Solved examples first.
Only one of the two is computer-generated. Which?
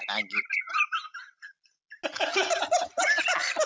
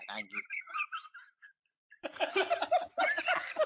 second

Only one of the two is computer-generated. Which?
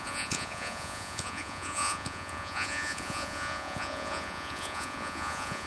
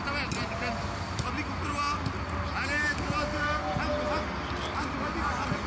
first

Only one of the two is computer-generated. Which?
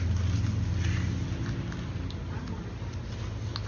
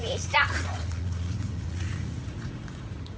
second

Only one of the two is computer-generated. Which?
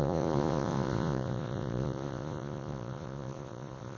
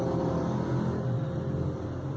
first